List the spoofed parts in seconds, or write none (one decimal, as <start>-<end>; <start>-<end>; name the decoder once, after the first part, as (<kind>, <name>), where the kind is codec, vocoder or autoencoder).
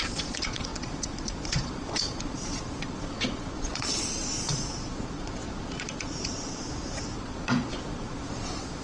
0.0-8.8 (vocoder, Vocos)